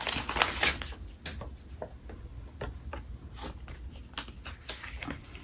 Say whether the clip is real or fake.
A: real